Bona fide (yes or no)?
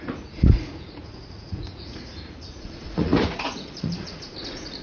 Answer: no